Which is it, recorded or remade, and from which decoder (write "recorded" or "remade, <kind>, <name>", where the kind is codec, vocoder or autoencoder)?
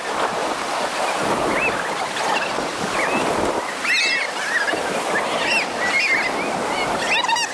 recorded